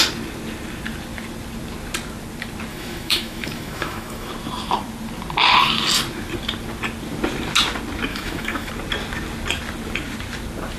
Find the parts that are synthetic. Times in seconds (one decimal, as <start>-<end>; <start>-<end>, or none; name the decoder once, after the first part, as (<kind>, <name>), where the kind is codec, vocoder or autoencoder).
2.7-4.3 (autoencoder, DAC-VAE); 8.1-8.7